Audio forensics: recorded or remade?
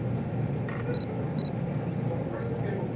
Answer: recorded